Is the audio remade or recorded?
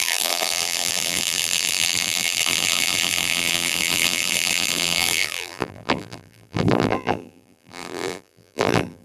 remade